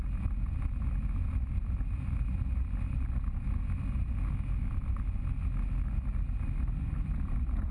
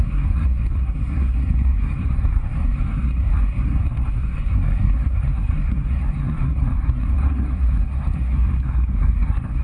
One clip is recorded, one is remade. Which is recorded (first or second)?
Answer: first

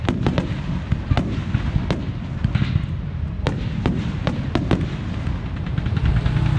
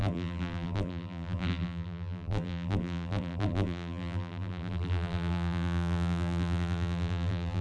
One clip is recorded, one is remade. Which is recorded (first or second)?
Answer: first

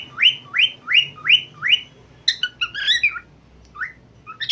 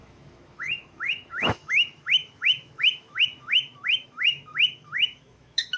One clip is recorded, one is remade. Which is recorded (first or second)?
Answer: first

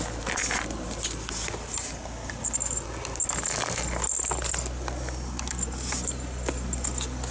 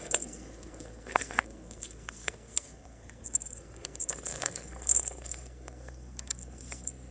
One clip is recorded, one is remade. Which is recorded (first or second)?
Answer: first